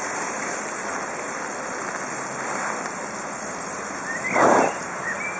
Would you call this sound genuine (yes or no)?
yes